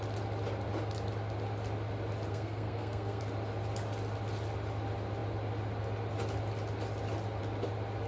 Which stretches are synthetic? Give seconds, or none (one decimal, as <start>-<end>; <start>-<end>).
2.3-3.2